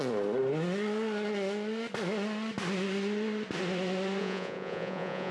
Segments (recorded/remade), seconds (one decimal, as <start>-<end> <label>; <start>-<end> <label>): 0.0-4.2 recorded; 4.2-5.3 remade